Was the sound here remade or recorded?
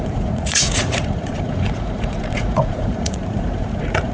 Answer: remade